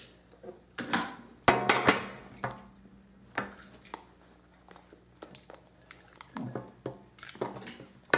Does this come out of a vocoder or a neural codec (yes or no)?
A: no